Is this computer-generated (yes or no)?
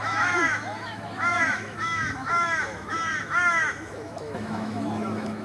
yes